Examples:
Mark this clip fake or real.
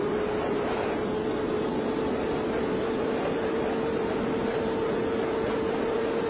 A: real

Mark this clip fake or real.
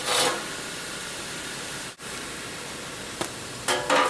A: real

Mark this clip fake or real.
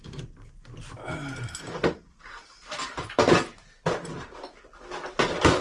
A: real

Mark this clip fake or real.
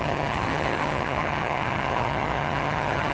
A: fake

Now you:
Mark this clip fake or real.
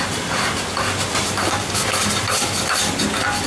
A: real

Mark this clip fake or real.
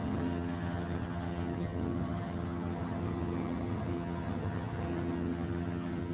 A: fake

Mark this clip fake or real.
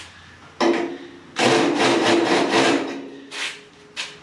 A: real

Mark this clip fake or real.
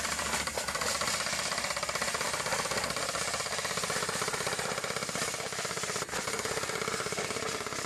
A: real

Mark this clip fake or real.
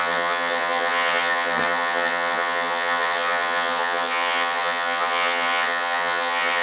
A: fake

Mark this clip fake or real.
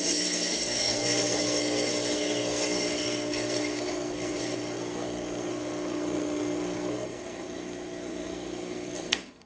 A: fake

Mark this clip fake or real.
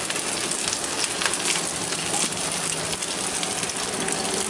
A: real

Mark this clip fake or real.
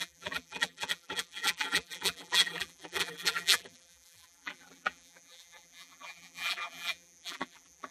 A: fake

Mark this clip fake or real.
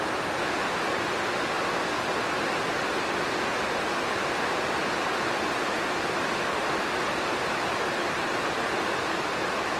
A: real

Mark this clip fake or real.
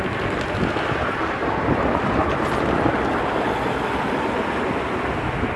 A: real